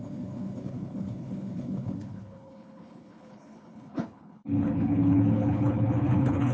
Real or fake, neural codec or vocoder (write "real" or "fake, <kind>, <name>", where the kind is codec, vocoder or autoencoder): fake, codec, HILCodec